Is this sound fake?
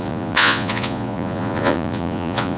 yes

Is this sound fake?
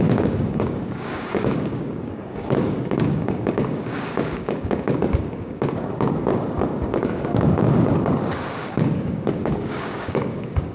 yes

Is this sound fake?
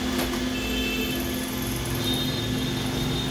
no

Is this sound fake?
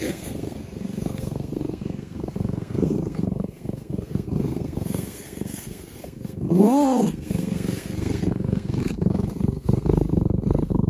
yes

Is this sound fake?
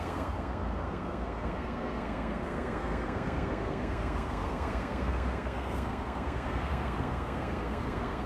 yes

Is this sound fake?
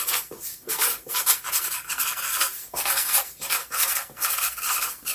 yes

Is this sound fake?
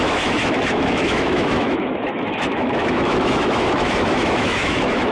yes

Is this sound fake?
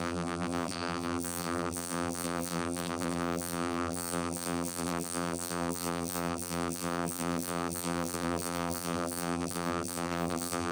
yes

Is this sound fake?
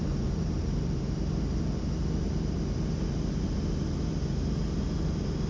no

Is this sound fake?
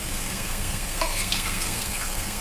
yes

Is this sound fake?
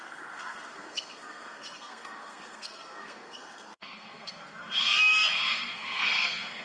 yes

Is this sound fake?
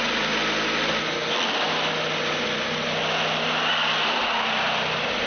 no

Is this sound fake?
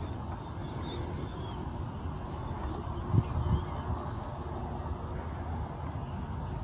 no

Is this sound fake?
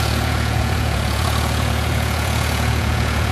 yes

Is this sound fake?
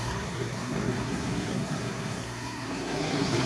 yes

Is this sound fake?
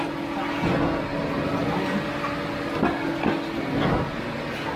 no